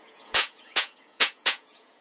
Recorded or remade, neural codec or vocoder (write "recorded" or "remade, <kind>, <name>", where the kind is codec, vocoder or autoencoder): remade, vocoder, Vocos